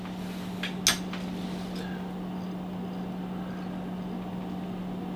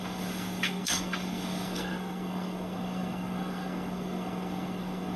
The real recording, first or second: first